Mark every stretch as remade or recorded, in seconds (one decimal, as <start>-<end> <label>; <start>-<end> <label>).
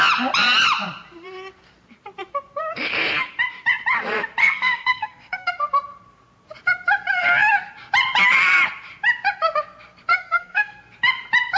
0.0-4.4 recorded; 4.4-5.5 remade; 5.5-10.1 recorded; 10.1-10.8 remade; 10.8-11.6 recorded